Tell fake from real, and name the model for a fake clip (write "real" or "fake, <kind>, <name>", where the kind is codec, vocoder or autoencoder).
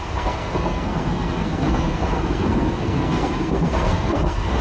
fake, codec, SNAC